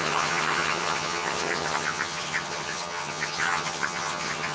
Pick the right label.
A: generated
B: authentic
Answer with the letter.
A